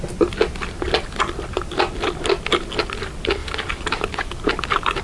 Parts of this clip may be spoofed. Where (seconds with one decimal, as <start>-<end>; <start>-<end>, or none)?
0.6-1.6; 3.4-5.0